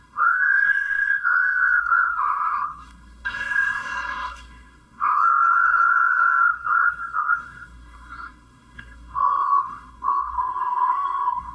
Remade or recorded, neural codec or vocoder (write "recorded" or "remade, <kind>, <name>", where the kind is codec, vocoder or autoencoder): remade, codec, SNAC